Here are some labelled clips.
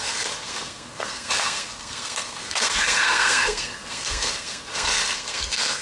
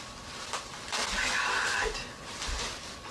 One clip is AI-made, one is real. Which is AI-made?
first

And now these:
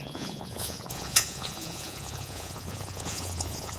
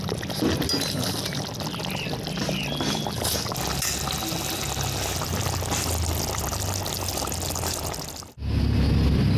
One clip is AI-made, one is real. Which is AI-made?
first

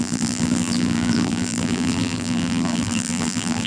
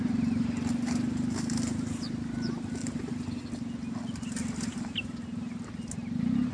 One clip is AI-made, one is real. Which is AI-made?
first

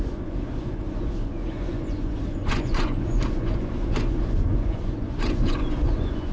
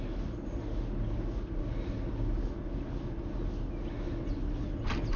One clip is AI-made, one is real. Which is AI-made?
first